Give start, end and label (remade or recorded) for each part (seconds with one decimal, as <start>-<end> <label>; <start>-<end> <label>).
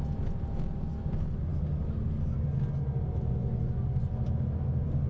0.0-5.1 recorded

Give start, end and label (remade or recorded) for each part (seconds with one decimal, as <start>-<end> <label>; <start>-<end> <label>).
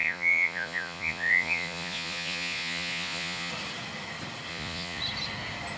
0.0-3.5 remade; 3.5-4.5 recorded; 4.5-5.0 remade; 5.0-5.8 recorded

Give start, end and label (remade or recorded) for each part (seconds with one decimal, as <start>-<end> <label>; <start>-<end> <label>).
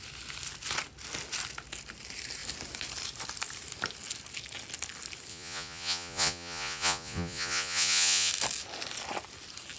0.0-5.3 recorded; 5.3-8.3 remade; 8.3-9.8 recorded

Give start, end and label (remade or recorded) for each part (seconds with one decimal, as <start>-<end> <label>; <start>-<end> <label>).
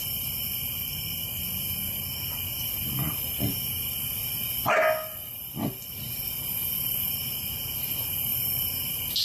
0.0-9.2 recorded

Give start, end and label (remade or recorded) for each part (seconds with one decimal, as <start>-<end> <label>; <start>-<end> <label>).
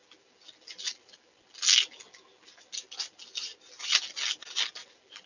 0.0-5.3 recorded